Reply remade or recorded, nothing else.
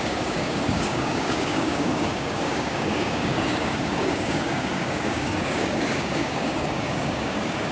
remade